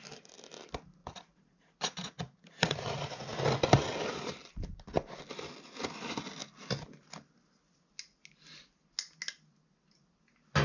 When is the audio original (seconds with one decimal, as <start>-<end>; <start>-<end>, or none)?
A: 0.0-1.0; 3.2-10.6

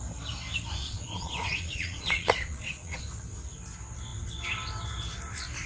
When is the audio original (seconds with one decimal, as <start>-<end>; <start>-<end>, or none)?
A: 0.0-0.8; 3.0-5.7

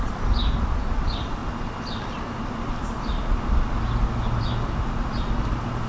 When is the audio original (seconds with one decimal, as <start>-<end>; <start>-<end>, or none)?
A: 0.0-5.9

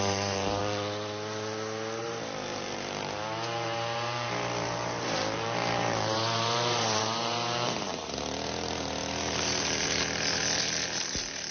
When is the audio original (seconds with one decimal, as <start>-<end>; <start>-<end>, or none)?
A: 0.6-2.0